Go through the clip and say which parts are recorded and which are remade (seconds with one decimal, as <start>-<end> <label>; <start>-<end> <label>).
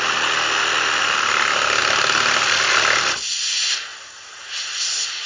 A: 0.0-3.9 recorded; 3.9-4.6 remade; 4.6-5.3 recorded